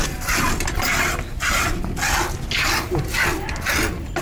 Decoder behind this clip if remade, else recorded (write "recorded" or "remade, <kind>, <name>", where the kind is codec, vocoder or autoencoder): recorded